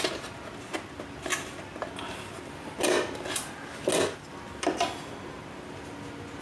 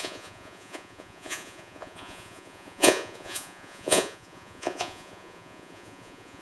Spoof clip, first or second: second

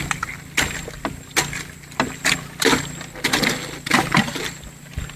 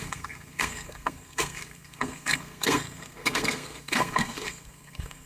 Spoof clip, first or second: second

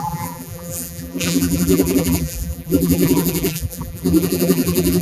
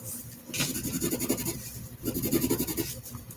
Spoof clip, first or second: first